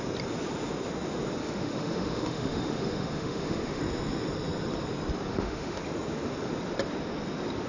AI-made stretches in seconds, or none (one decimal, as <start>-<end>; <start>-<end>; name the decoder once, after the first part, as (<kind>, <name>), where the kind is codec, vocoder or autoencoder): 1.4-3.8 (autoencoder, DAC-VAE); 5.3-5.8